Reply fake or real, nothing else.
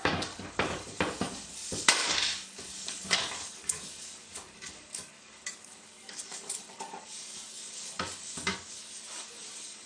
fake